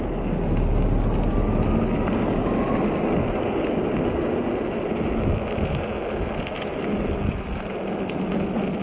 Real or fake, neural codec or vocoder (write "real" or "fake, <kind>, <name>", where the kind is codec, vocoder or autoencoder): real